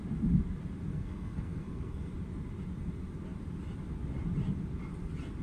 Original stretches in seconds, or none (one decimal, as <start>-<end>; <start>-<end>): 0.0-0.9; 2.1-5.4